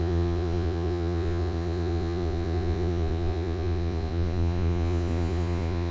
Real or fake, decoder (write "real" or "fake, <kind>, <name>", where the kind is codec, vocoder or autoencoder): fake, vocoder, Vocos